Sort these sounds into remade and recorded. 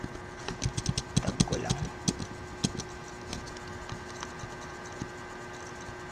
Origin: recorded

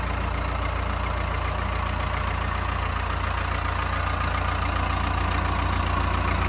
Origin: recorded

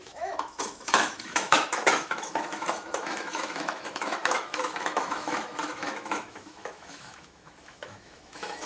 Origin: remade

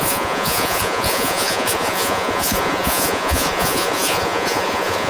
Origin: remade